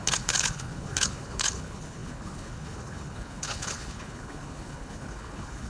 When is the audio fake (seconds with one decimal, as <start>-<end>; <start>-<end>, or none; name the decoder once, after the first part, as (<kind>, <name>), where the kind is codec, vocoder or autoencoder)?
0.0-5.7 (codec, HILCodec)